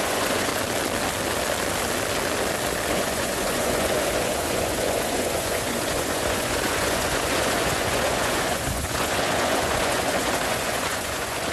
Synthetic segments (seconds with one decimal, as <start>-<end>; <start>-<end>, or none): 0.0-0.5; 2.9-11.5